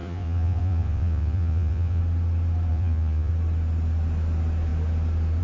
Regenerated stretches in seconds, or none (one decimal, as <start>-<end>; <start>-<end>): 0.0-2.0; 2.7-3.3